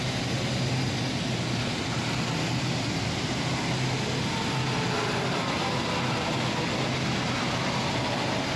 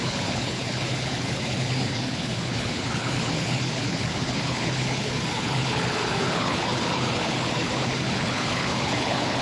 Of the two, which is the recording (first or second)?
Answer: first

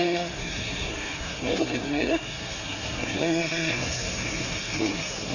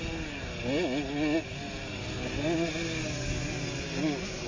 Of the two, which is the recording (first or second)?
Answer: second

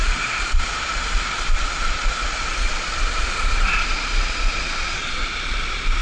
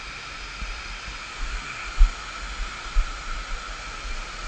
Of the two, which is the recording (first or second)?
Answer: second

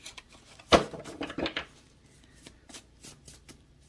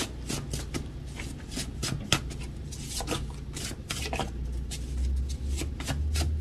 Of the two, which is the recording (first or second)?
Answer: second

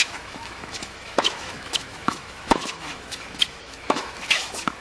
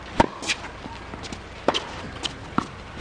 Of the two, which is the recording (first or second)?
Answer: second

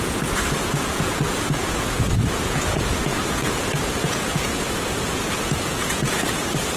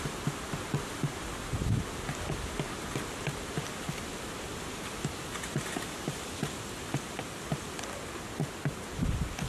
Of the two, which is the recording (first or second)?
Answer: second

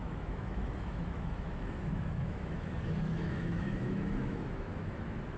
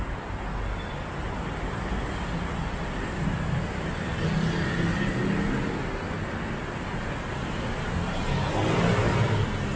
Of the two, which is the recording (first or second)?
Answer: second